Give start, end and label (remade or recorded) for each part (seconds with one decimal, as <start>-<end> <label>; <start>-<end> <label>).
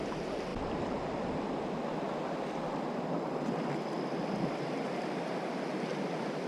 0.0-6.5 recorded